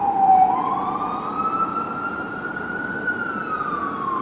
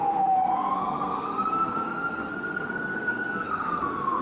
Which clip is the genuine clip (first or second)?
first